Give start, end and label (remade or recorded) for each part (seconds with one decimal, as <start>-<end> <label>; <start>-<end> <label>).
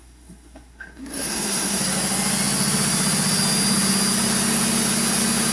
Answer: 0.0-1.8 remade; 1.8-5.5 recorded